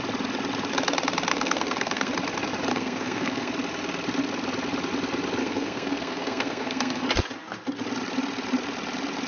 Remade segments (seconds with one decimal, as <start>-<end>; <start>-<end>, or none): 1.3-2.1; 2.7-3.5; 5.4-7.0